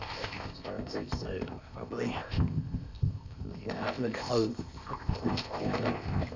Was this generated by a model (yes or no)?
yes